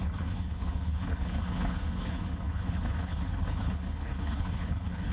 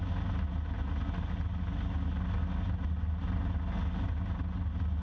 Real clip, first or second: second